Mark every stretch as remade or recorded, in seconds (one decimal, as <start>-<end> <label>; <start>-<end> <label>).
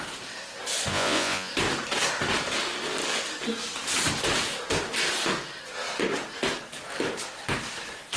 0.0-0.9 recorded; 0.9-1.5 remade; 1.5-8.2 recorded